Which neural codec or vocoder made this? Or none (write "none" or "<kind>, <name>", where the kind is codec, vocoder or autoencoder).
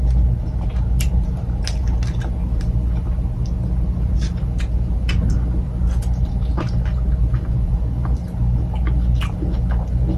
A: none